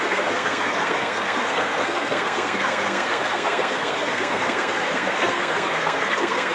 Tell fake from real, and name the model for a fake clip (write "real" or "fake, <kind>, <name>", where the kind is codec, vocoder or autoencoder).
fake, codec, SNAC